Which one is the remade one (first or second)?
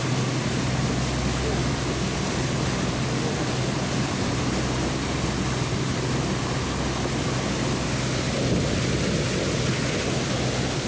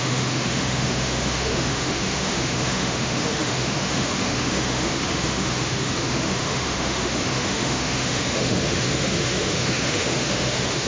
second